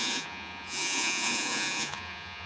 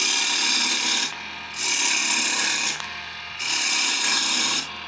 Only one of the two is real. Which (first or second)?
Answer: second